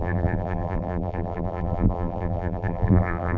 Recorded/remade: remade